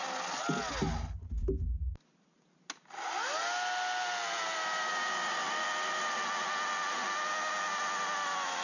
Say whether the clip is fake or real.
real